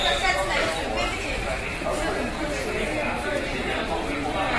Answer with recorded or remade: recorded